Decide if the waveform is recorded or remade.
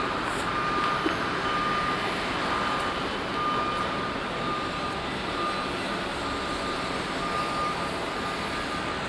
recorded